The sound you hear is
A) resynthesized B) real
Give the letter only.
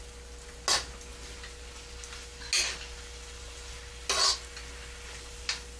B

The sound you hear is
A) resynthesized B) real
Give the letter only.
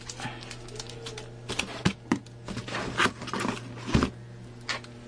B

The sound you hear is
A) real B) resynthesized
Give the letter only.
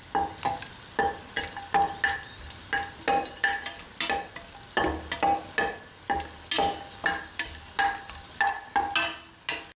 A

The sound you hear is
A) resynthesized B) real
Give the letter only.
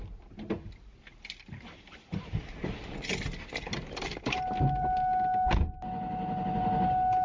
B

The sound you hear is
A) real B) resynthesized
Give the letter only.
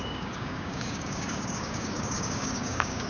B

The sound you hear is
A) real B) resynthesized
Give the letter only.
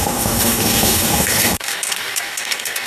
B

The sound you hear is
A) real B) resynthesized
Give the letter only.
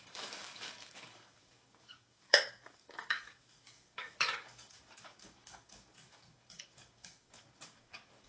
B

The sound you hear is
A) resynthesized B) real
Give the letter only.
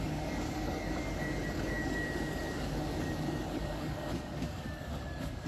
A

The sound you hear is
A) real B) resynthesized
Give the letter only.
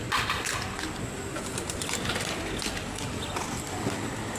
A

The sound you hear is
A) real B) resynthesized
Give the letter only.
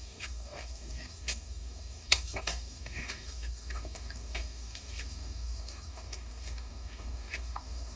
B